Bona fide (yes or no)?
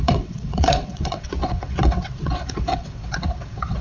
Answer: no